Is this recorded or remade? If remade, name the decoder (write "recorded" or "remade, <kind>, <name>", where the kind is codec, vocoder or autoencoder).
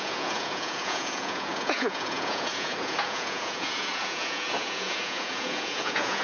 remade, vocoder, Vocos